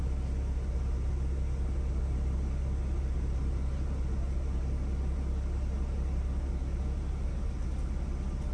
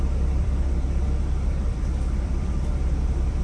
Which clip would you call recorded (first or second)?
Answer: first